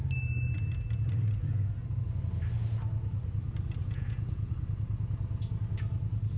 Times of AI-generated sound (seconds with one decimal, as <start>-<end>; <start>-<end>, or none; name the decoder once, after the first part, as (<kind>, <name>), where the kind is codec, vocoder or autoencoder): 3.8-4.5 (vocoder, Vocos)